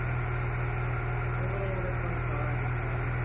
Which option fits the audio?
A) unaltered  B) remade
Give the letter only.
A